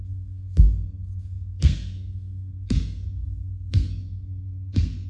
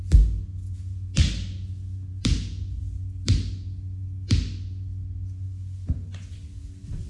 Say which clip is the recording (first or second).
second